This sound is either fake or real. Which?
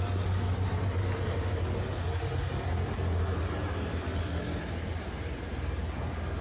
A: real